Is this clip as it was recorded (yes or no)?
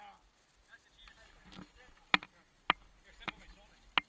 yes